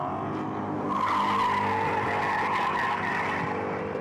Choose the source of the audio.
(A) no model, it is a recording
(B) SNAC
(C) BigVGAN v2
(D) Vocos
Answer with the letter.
A